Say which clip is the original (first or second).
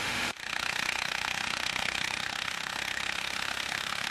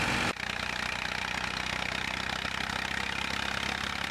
second